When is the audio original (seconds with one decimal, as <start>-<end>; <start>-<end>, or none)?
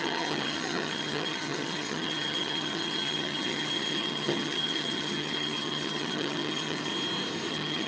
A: 6.9-7.5